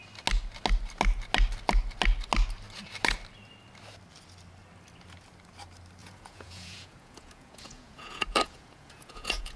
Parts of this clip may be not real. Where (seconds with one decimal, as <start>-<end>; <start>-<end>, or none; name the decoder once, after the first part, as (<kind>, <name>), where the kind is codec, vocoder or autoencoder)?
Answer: 6.0-9.6 (vocoder, Vocos)